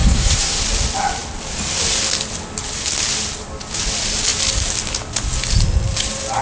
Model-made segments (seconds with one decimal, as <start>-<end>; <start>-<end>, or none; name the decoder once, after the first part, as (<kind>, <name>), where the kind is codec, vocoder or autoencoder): 0.0-0.6 (codec, SNAC)